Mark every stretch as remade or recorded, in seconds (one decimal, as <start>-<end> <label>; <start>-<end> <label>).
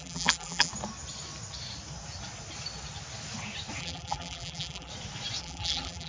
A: 0.0-0.7 remade; 0.7-3.8 recorded; 3.8-4.9 remade; 4.9-5.4 recorded; 5.4-6.1 remade